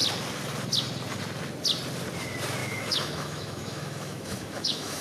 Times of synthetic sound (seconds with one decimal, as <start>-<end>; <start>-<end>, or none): 2.6-5.0